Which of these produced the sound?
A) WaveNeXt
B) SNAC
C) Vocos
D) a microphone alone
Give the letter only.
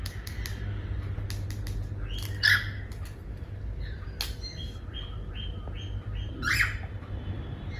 D